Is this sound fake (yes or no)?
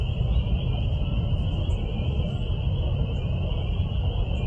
no